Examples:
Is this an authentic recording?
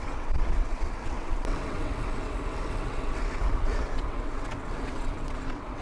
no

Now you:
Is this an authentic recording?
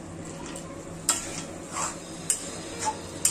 yes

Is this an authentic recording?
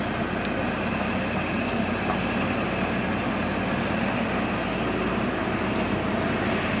yes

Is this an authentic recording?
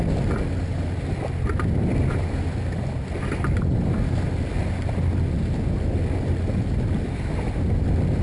yes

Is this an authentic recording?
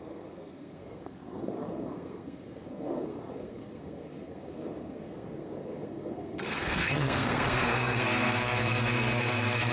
no